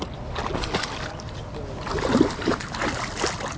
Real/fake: real